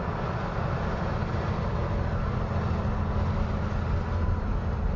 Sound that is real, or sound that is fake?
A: real